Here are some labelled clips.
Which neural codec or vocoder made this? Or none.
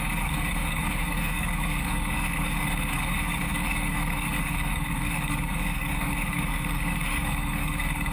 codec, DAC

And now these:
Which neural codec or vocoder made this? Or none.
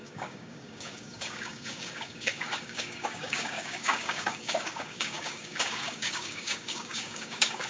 codec, DAC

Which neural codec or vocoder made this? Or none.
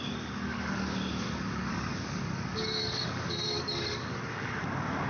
codec, DAC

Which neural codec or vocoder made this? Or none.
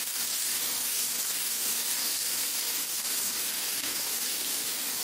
codec, DAC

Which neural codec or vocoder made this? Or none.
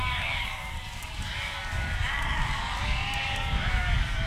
codec, DAC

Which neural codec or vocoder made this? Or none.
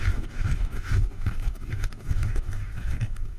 codec, DAC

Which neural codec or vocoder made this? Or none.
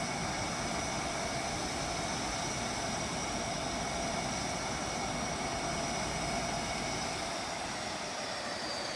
none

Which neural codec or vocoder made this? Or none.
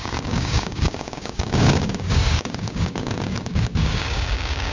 codec, DAC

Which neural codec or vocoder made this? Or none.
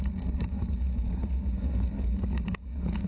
codec, DAC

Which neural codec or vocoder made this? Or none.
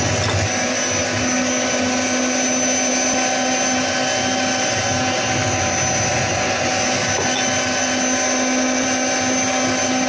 none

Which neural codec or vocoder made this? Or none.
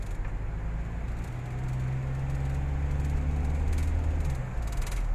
none